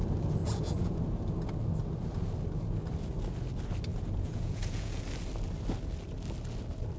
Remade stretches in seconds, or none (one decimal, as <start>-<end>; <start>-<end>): 0.4-1.0; 3.9-5.0